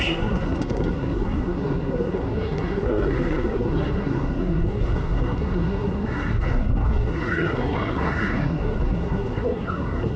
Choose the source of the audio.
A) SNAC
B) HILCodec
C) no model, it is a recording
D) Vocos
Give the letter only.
A